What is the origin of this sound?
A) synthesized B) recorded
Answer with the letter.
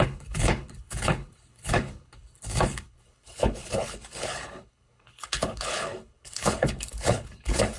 A